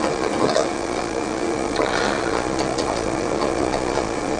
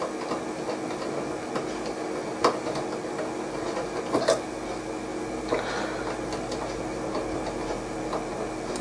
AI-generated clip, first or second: first